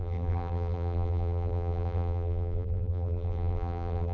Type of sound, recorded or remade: remade